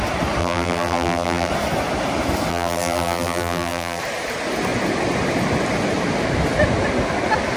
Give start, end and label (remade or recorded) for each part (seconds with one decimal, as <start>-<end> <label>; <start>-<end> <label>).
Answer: 0.0-0.4 recorded; 0.4-1.5 remade; 1.5-2.5 recorded; 2.5-4.0 remade; 4.0-7.6 recorded

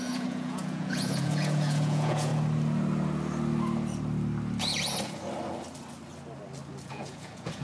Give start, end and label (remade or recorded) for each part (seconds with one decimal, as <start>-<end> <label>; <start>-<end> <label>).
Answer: 0.0-2.3 remade; 2.3-6.9 recorded; 6.9-7.6 remade

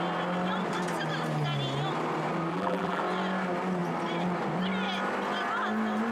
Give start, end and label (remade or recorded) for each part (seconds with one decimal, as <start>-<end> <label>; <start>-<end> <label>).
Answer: 0.0-2.5 recorded; 2.5-3.0 remade; 3.0-6.1 recorded

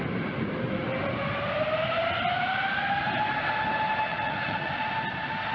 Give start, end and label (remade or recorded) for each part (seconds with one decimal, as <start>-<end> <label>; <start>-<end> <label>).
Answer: 0.0-4.1 recorded; 4.1-4.9 remade; 4.9-5.5 recorded

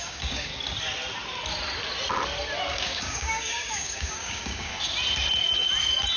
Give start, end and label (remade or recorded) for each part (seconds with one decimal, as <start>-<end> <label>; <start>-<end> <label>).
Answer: 0.0-0.5 remade; 0.5-2.7 recorded; 2.7-4.7 remade; 4.7-6.2 recorded

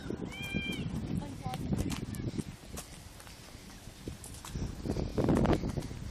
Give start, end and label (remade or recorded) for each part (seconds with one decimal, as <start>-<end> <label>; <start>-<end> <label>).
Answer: 0.0-6.1 recorded

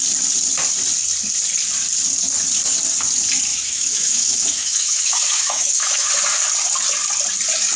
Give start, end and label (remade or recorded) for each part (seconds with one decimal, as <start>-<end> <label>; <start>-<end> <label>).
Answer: 0.0-3.5 recorded; 3.5-6.1 remade; 6.1-7.8 recorded

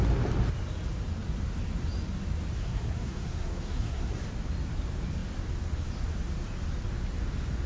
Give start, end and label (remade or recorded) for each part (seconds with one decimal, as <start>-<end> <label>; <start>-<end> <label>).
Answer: 0.0-2.6 recorded; 2.6-4.1 remade; 4.1-7.7 recorded